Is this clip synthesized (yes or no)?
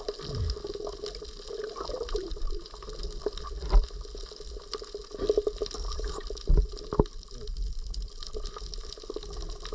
no